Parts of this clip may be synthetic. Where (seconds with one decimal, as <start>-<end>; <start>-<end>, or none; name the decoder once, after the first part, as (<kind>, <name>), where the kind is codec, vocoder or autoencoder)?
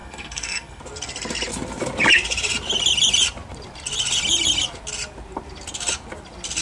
0.0-0.8 (codec, SNAC)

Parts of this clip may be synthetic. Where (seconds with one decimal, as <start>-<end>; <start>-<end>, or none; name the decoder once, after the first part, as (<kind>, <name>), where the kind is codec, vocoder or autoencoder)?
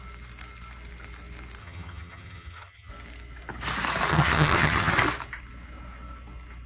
1.6-2.9 (vocoder, HiFi-GAN); 4.1-4.9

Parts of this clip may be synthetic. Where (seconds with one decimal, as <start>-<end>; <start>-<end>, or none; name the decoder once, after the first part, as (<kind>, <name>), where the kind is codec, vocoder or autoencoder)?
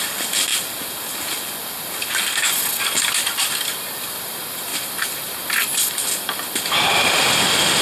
4.7-6.1 (vocoder, BigVGAN v2)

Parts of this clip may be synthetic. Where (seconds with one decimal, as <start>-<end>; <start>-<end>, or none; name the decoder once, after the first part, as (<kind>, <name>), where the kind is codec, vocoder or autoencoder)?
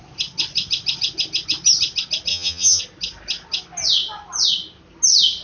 2.3-2.8 (vocoder, HiFi-GAN)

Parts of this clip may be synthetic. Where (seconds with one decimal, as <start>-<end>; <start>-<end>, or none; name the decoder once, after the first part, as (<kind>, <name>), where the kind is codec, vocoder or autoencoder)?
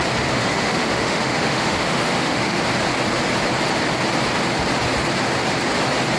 0.4-2.6 (autoencoder, DAC-VAE)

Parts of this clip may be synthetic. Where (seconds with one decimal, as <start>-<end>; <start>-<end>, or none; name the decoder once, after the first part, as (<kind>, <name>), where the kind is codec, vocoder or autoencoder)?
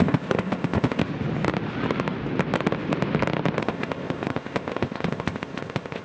0.0-1.0 (codec, ZipCodec); 3.6-6.0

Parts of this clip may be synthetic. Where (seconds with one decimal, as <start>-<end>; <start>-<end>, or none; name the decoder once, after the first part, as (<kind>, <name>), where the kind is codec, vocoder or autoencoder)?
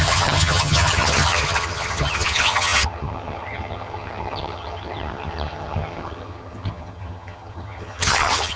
0.0-8.6 (vocoder, HiFi-GAN)